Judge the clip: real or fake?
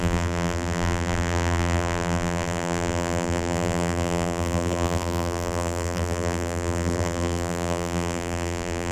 fake